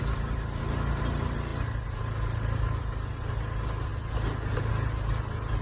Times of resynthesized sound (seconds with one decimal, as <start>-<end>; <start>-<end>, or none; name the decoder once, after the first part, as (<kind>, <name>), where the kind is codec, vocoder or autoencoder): none